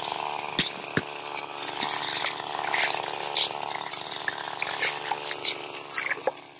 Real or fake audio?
real